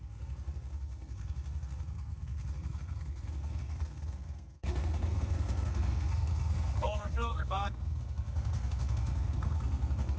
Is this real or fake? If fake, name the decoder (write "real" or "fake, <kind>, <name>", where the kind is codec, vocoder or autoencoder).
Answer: fake, codec, SNAC